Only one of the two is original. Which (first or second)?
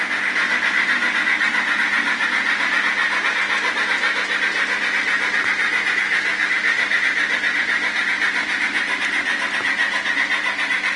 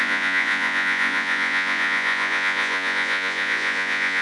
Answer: first